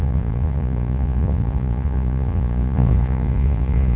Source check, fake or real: fake